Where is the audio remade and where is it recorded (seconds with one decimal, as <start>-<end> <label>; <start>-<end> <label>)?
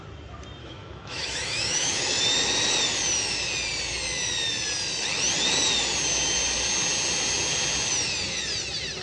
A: 0.0-0.6 recorded; 0.6-2.2 remade; 2.2-9.0 recorded